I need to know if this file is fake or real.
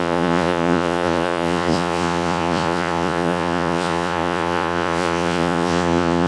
fake